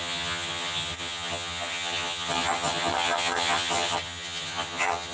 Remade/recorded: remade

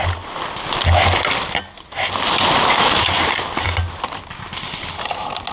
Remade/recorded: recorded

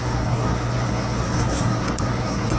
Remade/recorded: remade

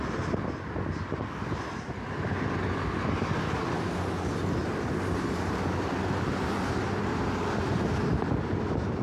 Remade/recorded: recorded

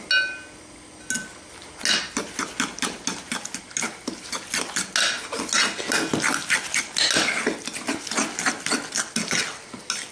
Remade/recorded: recorded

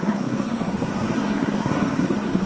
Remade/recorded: remade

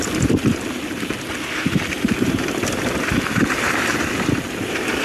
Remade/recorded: remade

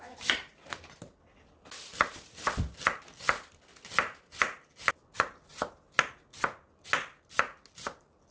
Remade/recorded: recorded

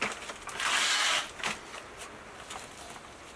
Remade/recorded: recorded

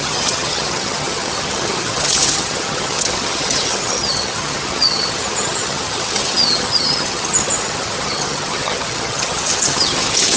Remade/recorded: remade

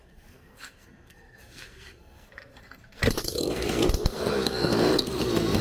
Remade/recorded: remade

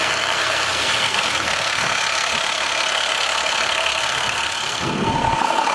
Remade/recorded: remade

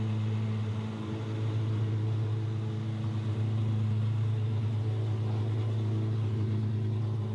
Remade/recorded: recorded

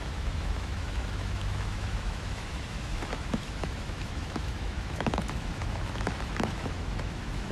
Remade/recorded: remade